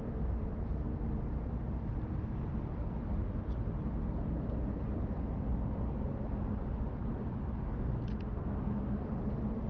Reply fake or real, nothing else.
real